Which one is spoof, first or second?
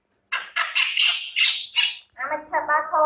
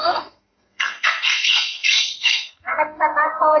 second